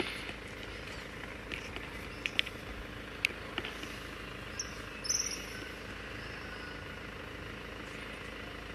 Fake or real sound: real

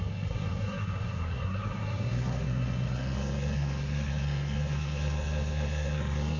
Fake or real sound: fake